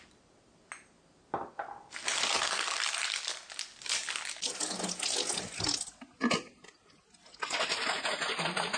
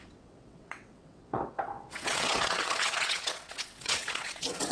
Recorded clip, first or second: first